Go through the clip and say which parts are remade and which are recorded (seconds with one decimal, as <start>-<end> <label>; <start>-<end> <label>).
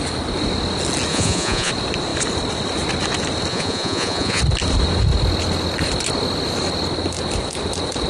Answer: 0.0-1.1 recorded; 1.1-1.7 remade; 1.7-3.5 recorded; 3.5-4.4 remade; 4.4-8.1 recorded